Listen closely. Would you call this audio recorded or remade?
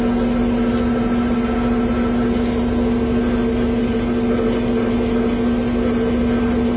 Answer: recorded